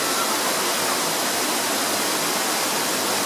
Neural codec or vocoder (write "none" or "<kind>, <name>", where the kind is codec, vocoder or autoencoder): none